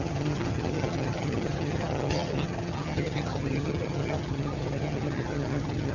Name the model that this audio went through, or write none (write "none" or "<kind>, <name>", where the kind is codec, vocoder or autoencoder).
vocoder, HiFi-GAN